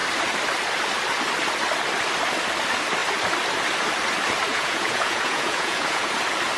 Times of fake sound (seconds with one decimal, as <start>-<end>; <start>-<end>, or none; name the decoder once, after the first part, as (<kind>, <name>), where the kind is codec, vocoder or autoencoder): 4.5-6.1 (vocoder, Vocos)